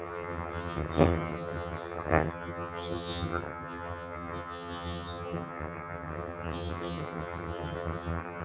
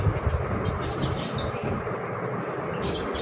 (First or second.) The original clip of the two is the second